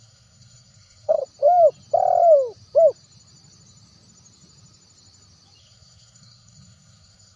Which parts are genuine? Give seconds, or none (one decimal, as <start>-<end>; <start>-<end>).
1.2-5.6